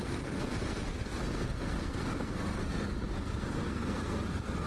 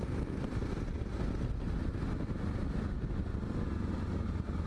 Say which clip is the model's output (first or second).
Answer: first